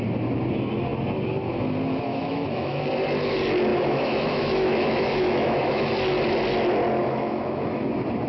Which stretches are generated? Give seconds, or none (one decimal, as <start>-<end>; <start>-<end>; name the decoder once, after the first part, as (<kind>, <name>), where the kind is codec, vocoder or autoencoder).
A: 2.1-2.8 (autoencoder, DAC-VAE); 3.7-5.9; 7.0-7.9